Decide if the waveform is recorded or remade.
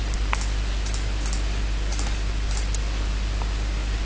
recorded